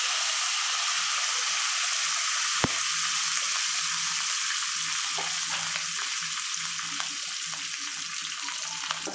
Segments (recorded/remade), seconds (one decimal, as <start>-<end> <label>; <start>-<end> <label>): 0.0-8.1 recorded; 8.1-8.6 remade; 8.6-9.1 recorded